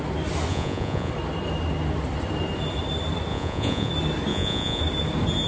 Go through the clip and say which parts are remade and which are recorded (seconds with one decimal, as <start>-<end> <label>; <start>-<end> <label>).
0.0-0.5 recorded; 0.5-1.1 remade; 1.1-3.3 recorded; 3.3-3.9 remade; 3.9-4.3 recorded; 4.3-4.8 remade; 4.8-5.5 recorded